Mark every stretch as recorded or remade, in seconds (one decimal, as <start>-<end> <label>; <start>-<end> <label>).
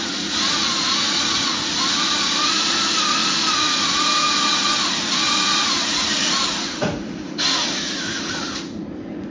0.0-9.3 remade